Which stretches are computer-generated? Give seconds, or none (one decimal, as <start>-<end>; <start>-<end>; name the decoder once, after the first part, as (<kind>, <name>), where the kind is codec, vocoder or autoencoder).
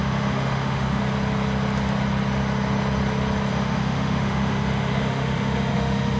0.0-1.0 (autoencoder, DAC-VAE); 3.5-6.2